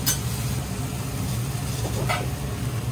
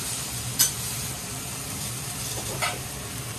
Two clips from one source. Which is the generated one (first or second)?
second